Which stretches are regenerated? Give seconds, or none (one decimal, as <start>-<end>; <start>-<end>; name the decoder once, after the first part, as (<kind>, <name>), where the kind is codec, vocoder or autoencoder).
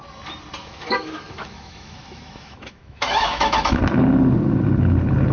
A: 0.6-3.8 (autoencoder, DAC-VAE)